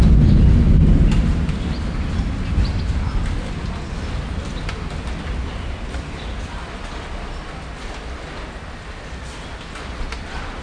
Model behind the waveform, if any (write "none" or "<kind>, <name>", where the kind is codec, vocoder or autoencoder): none